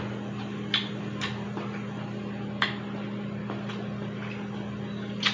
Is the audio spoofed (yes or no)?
no